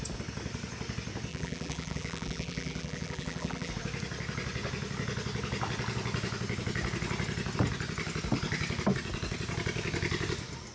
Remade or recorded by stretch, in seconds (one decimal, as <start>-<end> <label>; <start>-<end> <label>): 0.0-1.3 recorded; 1.3-3.7 remade; 3.7-10.7 recorded